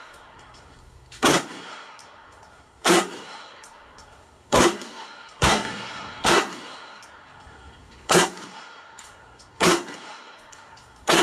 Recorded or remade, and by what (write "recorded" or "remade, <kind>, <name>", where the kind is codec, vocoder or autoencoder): remade, codec, SNAC